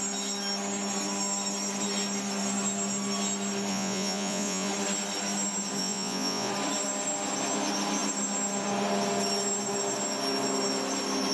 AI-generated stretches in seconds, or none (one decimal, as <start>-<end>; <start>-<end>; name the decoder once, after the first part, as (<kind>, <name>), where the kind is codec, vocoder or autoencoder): 3.7-4.7 (vocoder, Vocos); 5.8-6.5